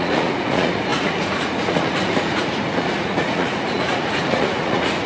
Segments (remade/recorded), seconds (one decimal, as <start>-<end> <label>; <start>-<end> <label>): 0.0-5.1 remade